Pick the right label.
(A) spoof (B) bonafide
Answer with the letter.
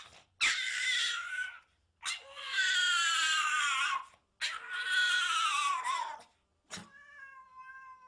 B